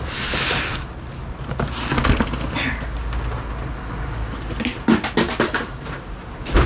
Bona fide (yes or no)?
yes